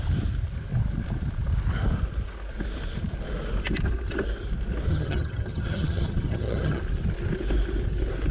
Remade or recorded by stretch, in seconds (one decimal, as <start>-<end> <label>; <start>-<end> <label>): 0.0-4.9 recorded; 4.9-6.8 remade; 6.8-8.3 recorded